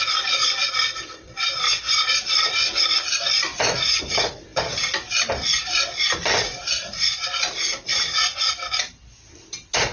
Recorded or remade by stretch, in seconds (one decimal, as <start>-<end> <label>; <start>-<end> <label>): 0.0-6.3 recorded; 6.3-7.2 remade; 7.2-7.9 recorded; 7.9-9.4 remade; 9.4-9.9 recorded